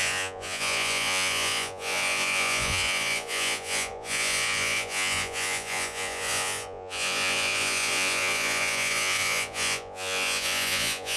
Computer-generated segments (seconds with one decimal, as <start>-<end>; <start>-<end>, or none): 0.0-11.2